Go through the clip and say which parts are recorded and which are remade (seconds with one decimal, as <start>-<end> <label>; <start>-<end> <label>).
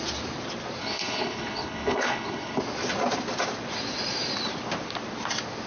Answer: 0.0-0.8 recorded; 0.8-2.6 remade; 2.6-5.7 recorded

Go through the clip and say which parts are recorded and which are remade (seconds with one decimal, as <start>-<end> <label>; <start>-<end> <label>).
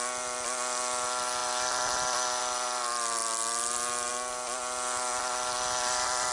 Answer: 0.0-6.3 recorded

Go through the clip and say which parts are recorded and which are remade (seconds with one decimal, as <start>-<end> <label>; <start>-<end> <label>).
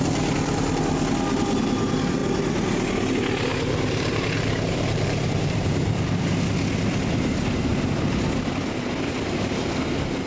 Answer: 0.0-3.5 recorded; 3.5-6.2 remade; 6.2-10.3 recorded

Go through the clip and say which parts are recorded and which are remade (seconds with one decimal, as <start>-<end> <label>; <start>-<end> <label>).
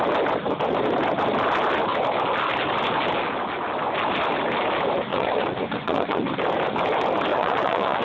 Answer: 0.0-5.1 recorded; 5.1-6.3 remade; 6.3-7.3 recorded; 7.3-8.0 remade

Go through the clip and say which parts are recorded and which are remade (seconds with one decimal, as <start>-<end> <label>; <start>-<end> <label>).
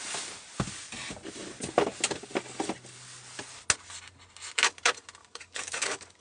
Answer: 0.0-5.2 recorded; 5.2-6.2 remade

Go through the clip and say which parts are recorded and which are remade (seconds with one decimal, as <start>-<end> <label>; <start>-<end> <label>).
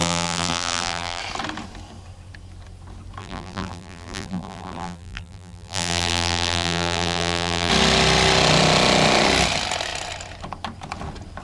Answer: 0.0-1.2 remade; 1.2-3.2 recorded; 3.2-7.7 remade; 7.7-11.4 recorded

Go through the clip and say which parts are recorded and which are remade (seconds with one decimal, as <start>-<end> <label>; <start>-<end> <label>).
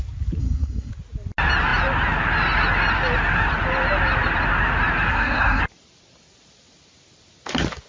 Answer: 0.0-0.4 recorded; 0.4-0.9 remade; 0.9-5.1 recorded; 5.1-5.6 remade; 5.6-7.9 recorded